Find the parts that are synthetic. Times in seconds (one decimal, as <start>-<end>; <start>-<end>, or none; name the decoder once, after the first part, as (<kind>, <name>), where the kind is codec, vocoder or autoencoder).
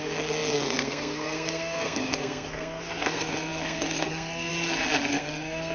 0.0-4.5 (codec, SNAC); 5.1-5.7